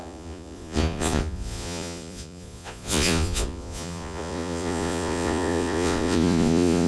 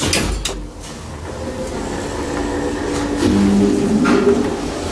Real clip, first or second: second